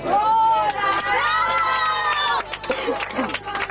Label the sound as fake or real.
real